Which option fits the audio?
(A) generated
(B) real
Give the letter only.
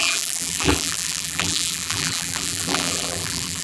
A